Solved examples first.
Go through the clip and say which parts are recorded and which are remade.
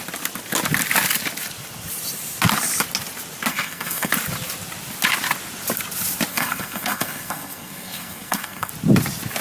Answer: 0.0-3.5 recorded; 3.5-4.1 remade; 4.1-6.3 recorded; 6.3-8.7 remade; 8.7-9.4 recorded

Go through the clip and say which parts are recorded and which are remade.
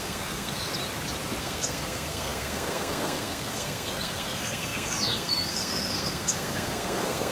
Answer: 0.0-0.7 remade; 0.7-1.4 recorded; 1.4-7.3 remade